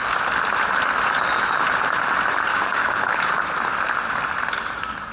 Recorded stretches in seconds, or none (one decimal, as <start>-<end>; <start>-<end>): 0.0-2.5; 3.3-5.1